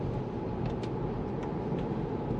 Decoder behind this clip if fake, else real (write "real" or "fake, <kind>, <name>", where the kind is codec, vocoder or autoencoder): real